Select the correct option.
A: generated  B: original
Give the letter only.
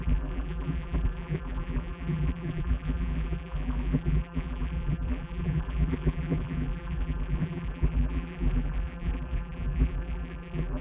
A